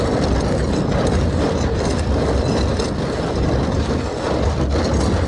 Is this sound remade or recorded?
recorded